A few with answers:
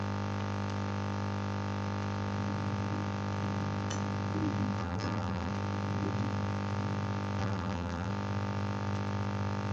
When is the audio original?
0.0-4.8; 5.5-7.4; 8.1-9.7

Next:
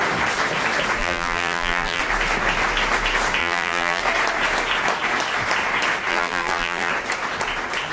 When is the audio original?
0.0-1.0; 2.0-3.4; 4.0-6.1; 6.9-7.9